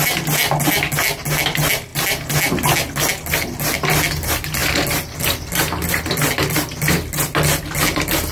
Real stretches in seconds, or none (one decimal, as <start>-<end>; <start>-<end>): 0.0-8.3